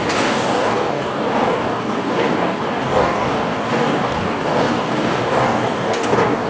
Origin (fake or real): fake